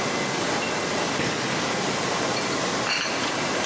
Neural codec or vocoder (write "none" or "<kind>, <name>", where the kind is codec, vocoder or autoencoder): none